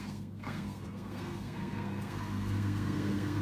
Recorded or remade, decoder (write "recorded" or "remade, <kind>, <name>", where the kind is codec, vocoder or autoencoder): remade, codec, SNAC